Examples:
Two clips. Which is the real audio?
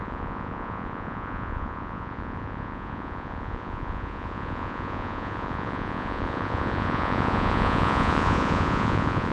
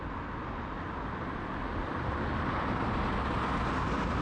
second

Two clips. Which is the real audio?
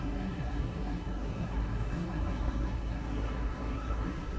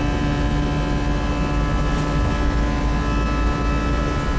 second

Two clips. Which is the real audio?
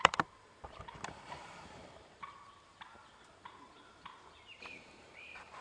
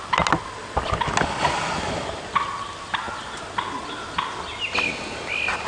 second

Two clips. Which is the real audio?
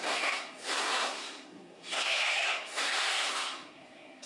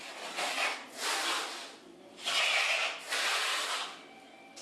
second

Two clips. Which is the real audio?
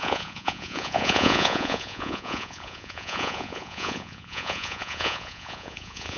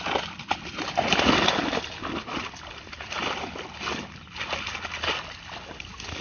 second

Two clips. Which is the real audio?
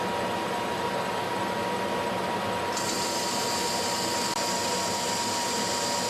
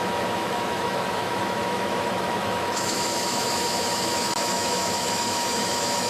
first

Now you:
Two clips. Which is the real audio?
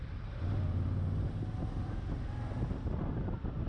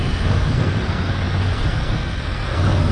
first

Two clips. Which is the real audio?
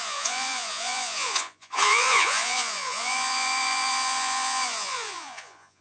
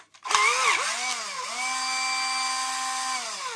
second